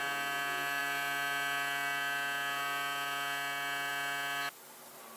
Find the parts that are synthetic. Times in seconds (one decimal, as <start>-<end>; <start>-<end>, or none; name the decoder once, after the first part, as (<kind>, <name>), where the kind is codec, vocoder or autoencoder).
none